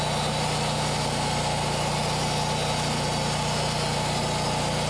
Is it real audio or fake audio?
real